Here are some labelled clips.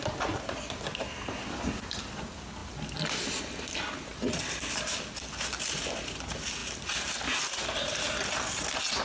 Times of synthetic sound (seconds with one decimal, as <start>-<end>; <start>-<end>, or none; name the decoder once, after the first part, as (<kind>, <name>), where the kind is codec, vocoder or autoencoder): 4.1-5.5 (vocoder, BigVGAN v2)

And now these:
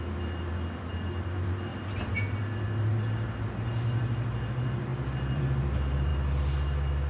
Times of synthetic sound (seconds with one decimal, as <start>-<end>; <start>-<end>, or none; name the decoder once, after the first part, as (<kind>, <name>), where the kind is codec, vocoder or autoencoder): 4.9-5.4 (vocoder, BigVGAN v2)

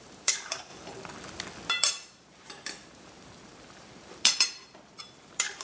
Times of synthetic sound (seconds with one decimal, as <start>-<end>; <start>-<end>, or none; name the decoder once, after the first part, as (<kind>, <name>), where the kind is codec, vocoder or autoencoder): 0.0-0.7 (vocoder, BigVGAN v2); 1.7-5.6

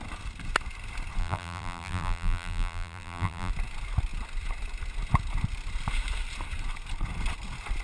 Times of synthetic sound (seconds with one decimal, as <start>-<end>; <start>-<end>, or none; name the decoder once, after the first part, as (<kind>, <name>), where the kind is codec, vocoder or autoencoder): 1.2-3.5 (vocoder, BigVGAN v2)